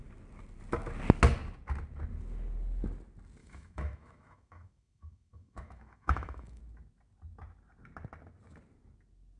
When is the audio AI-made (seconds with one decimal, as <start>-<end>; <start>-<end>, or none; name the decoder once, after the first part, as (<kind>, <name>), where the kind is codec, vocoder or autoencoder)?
3.4-6.6 (autoencoder, DAC-VAE)